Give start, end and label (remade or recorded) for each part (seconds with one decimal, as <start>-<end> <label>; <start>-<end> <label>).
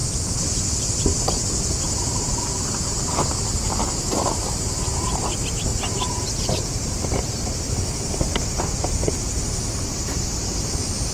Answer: 0.0-1.2 remade; 1.2-5.7 recorded; 5.7-7.7 remade; 7.7-11.1 recorded